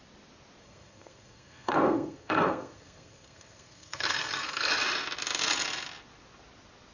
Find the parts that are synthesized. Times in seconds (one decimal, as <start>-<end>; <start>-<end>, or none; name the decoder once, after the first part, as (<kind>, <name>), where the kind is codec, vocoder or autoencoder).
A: 0.6-4.7 (codec, SNAC)